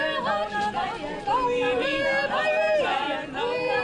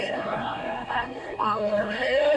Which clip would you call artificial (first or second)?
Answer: second